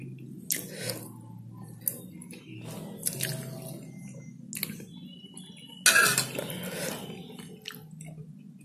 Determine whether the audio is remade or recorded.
recorded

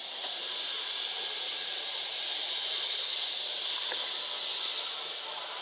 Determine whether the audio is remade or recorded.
recorded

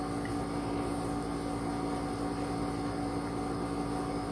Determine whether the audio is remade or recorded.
recorded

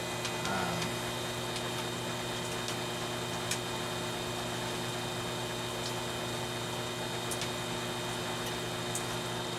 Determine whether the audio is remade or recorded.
recorded